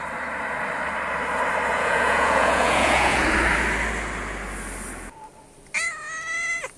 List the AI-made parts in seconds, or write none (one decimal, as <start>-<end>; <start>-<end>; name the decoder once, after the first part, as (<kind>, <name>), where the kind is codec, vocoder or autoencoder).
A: 1.7-3.2 (vocoder, Vocos)